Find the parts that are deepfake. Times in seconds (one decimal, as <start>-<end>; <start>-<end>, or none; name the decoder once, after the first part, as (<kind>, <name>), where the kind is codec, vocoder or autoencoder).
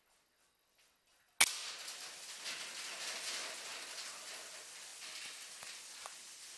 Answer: none